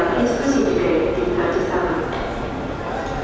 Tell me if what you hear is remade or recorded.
recorded